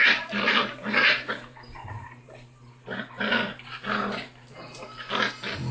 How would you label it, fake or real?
real